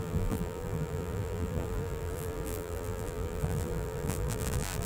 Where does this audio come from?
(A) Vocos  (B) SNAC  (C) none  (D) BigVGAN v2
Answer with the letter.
D